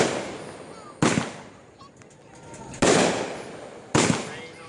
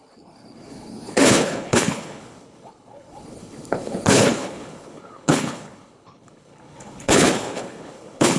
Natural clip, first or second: first